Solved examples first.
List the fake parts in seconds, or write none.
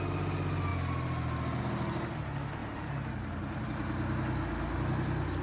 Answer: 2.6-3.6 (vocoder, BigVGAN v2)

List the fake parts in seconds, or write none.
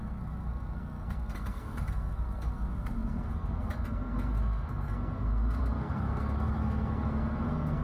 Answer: 0.0-7.8 (codec, SNAC)